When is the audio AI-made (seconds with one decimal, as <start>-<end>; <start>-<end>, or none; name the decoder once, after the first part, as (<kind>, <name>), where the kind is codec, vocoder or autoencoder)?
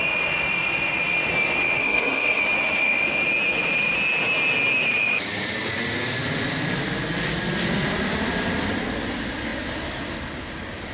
1.8-2.4 (codec, SNAC)